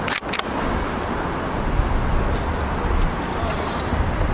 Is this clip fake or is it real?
real